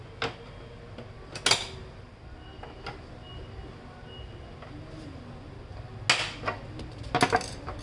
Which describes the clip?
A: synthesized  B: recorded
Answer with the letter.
B